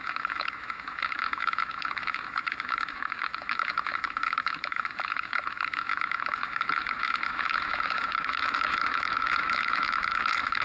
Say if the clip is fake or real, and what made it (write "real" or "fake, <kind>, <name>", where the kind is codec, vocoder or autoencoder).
fake, autoencoder, DAC-VAE